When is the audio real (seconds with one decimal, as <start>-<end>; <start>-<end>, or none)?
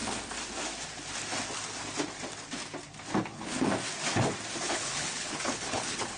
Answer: 0.0-3.2; 3.7-4.5